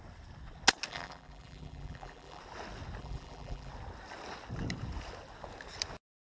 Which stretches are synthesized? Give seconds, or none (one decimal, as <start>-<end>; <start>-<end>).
0.9-2.4; 3.0-3.7